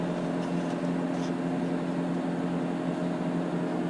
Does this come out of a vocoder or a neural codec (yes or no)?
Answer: no